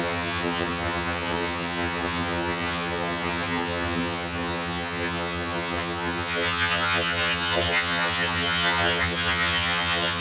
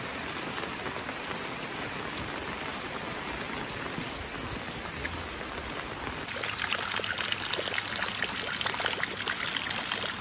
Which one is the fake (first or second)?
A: first